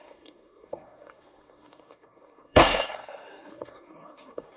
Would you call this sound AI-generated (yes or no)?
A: yes